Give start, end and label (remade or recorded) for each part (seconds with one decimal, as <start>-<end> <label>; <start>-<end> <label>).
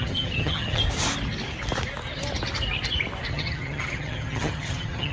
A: 0.0-0.8 remade; 0.8-3.3 recorded; 3.3-5.1 remade